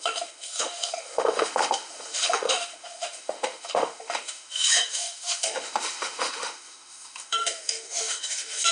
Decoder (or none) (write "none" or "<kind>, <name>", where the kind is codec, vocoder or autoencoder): autoencoder, DAC-VAE